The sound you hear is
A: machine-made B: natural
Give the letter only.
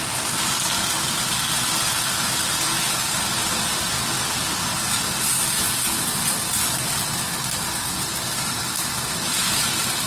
B